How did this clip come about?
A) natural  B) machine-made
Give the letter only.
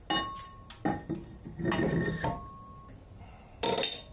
A